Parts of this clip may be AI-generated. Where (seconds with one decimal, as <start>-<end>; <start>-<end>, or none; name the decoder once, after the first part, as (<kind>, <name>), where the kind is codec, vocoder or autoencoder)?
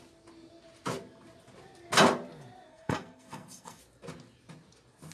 2.7-3.8 (codec, SNAC)